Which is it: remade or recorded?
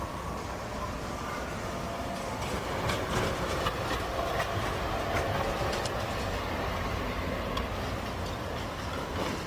recorded